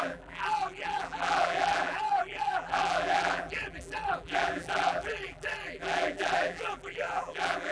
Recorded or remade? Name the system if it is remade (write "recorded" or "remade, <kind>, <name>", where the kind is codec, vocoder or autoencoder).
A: remade, vocoder, BigVGAN v2